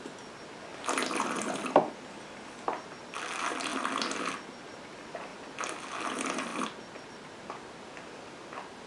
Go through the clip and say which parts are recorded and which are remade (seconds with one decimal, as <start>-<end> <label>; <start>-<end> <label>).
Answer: 0.0-8.9 recorded